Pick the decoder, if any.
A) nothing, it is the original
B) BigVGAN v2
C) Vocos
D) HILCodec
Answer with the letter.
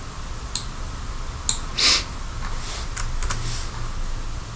A